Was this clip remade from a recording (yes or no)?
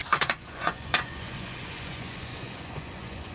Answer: yes